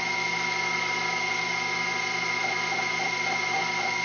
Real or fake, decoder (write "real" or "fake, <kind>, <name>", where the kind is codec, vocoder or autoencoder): real